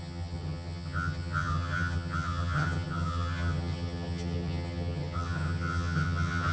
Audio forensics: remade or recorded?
remade